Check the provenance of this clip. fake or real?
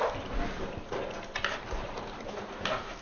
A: real